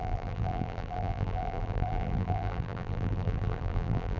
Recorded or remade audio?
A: remade